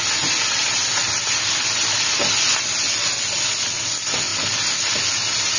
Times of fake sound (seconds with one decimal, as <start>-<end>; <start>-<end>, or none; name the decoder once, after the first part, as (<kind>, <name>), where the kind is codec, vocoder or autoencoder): none